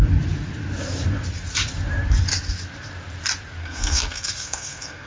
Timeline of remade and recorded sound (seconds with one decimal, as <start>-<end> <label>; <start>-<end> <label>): 0.0-3.6 recorded; 3.6-5.1 remade

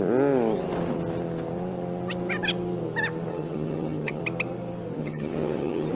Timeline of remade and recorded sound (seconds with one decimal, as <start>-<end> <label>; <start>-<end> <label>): 0.0-3.3 recorded; 3.3-4.2 remade; 4.2-5.0 recorded; 5.0-5.9 remade

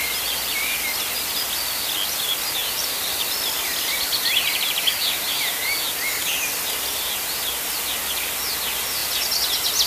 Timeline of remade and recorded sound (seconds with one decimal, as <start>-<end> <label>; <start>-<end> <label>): 0.0-9.9 recorded

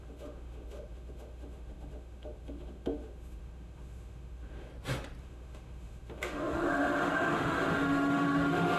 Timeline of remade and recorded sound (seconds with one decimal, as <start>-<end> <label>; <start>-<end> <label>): 0.0-4.7 remade; 4.7-5.2 recorded; 5.2-8.8 remade